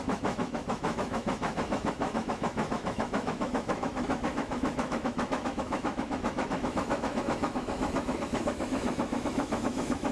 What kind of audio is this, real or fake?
fake